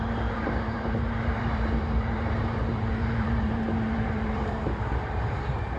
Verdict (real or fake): fake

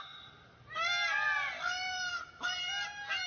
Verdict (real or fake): real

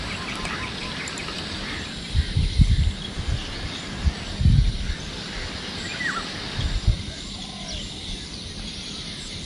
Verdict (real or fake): real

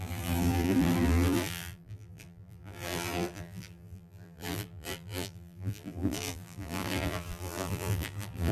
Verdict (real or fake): fake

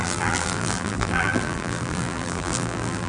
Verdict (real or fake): fake